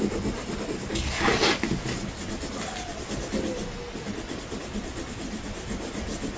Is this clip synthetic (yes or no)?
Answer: no